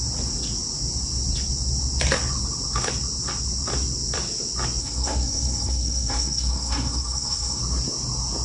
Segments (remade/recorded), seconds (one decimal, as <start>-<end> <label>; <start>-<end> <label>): 0.0-4.8 recorded; 4.8-7.6 remade; 7.6-8.4 recorded